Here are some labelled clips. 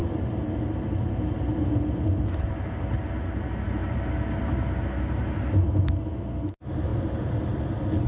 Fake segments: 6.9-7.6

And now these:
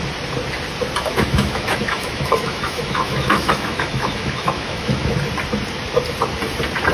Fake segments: 1.1-5.2

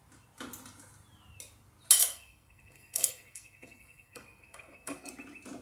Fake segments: 2.1-5.1

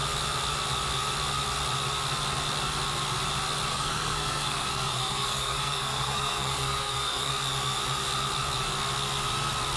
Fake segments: 3.7-7.3

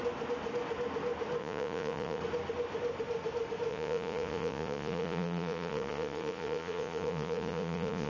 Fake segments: 1.4-2.2; 3.7-8.1

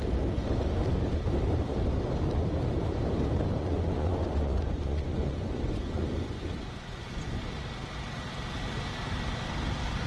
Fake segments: 3.6-7.4

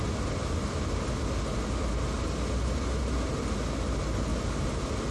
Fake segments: none

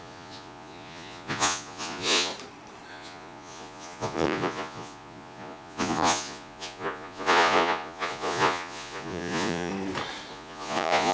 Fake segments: 0.0-2.3; 2.9-9.7; 10.3-11.1